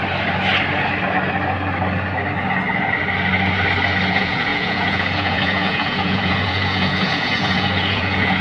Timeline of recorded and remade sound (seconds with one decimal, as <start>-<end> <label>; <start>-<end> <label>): 0.0-4.1 recorded; 4.1-8.4 remade